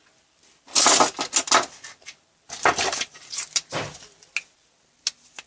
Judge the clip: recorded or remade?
recorded